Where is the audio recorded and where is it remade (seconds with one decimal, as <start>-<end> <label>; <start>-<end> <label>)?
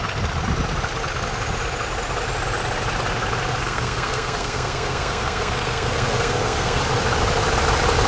0.0-3.6 recorded; 3.6-6.8 remade; 6.8-8.1 recorded